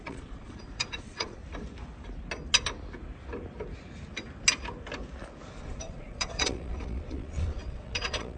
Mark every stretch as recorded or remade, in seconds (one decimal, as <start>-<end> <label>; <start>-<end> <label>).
0.0-1.4 remade; 1.4-5.6 recorded; 5.6-8.4 remade